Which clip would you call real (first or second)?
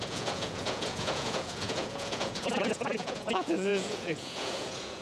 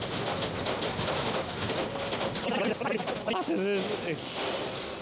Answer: second